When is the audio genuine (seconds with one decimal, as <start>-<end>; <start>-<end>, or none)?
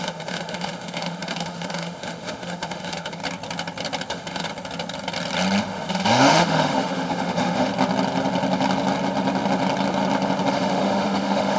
3.2-4.1; 4.5-5.6; 7.7-10.5